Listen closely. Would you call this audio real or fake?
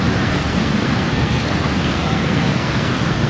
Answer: fake